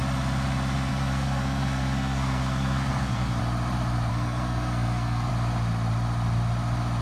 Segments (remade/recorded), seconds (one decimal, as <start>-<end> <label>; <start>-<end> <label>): 0.0-0.9 recorded; 0.9-3.4 remade; 3.4-4.1 recorded; 4.1-5.3 remade; 5.3-7.0 recorded